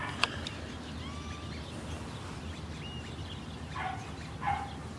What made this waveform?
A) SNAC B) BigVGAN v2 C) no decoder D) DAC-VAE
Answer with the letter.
C